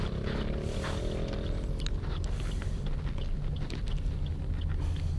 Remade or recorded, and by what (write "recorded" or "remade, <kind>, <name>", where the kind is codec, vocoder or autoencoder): recorded